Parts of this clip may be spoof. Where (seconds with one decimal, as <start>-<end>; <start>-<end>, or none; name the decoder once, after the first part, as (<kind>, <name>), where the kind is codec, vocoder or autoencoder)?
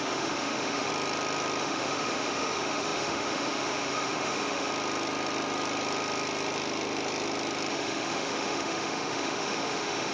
0.0-0.9 (autoencoder, DAC-VAE); 1.6-4.7; 7.7-10.1